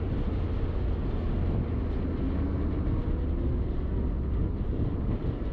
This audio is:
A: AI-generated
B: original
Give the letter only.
B